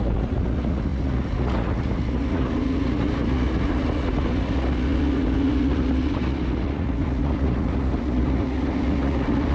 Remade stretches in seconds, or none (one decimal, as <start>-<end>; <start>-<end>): 0.0-9.5